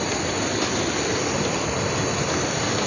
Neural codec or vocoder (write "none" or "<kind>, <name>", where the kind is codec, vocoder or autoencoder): vocoder, BigVGAN v2